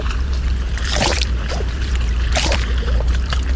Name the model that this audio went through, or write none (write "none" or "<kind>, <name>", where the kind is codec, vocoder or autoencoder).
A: vocoder, BigVGAN v2